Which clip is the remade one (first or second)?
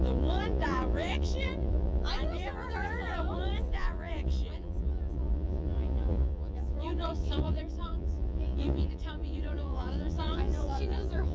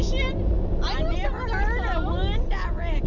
first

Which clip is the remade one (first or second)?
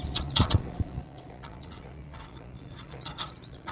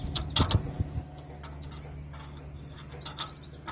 first